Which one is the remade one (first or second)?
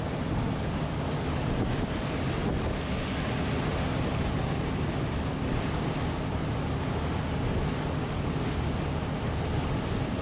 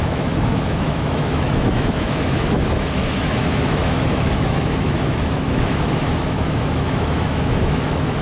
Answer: second